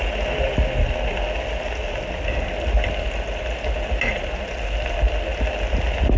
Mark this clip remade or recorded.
recorded